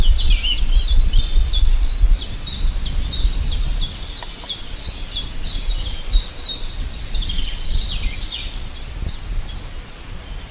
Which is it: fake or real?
real